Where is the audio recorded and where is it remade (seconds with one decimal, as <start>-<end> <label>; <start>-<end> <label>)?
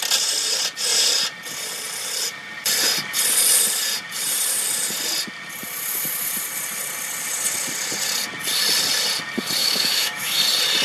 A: 0.0-9.6 recorded; 9.6-10.4 remade; 10.4-10.8 recorded